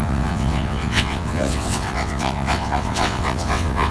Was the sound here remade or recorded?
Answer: remade